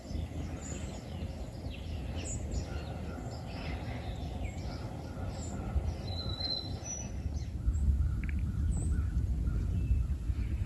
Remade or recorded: recorded